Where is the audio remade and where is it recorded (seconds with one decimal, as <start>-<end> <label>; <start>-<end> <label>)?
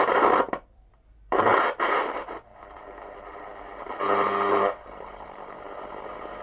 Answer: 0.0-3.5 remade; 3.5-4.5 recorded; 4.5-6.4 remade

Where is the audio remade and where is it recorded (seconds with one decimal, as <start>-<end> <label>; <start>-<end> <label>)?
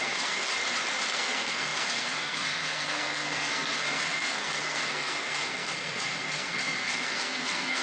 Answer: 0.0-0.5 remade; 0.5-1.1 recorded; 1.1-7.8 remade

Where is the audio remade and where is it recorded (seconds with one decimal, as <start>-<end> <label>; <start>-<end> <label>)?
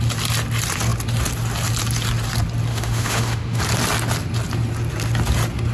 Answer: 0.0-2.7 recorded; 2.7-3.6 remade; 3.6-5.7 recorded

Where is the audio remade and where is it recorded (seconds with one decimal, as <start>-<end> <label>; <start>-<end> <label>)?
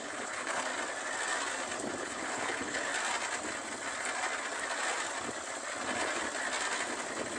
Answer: 0.0-0.7 remade; 0.7-2.0 recorded; 2.0-2.9 remade; 2.9-7.4 recorded